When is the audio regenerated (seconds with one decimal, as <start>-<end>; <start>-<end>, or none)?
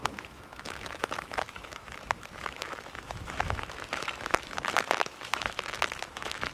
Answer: 0.0-6.5